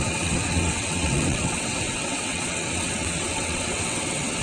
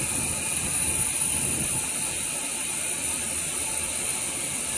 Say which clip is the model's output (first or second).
first